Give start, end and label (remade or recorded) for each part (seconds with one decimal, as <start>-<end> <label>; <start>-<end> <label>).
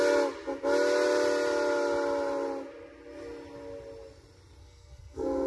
0.0-4.6 recorded; 4.6-5.5 remade